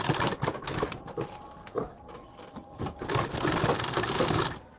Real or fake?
real